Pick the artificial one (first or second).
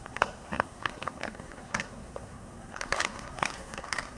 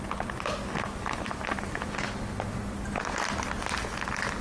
first